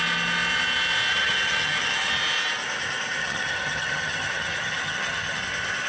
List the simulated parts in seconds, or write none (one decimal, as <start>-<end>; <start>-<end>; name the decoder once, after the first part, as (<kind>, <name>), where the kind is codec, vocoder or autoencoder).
1.1-2.1 (vocoder, HiFi-GAN); 3.2-5.4